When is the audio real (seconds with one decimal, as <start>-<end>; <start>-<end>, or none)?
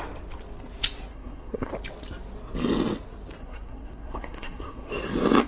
0.0-1.1; 1.7-3.4; 4.9-5.5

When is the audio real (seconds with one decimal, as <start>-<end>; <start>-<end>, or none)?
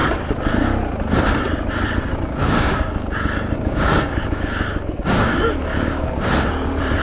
0.0-2.1; 6.3-7.0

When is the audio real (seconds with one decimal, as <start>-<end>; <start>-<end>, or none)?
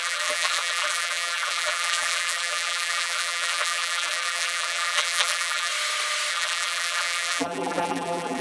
5.7-6.3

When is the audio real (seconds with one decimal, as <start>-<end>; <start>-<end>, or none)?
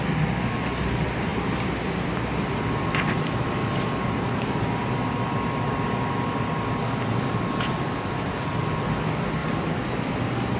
1.3-1.8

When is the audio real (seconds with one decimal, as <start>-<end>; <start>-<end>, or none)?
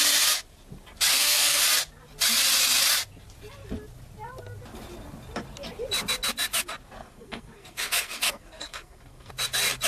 0.0-1.1; 1.6-7.0; 9.3-9.9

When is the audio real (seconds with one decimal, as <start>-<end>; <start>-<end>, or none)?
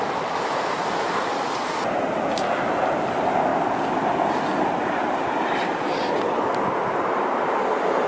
0.0-8.1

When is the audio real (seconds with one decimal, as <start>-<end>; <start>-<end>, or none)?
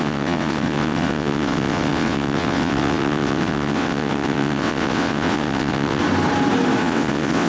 6.0-6.8